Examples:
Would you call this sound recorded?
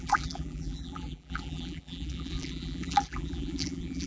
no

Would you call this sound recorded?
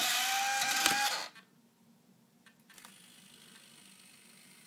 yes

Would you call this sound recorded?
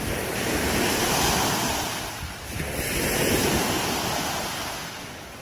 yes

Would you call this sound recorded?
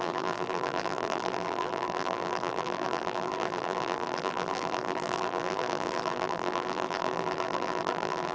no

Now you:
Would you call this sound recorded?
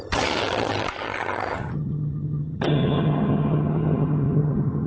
no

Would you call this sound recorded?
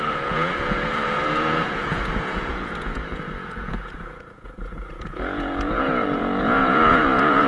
no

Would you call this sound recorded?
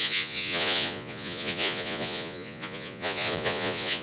no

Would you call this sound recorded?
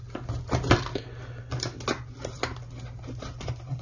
yes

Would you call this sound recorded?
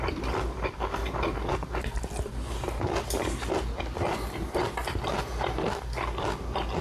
yes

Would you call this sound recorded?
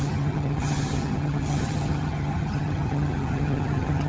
no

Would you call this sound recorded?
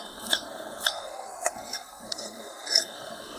no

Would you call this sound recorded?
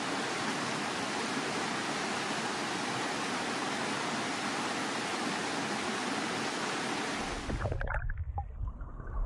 yes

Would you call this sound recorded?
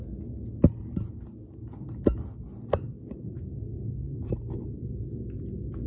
yes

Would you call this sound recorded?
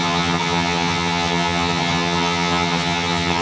no